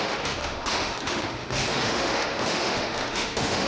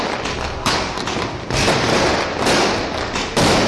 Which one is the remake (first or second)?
first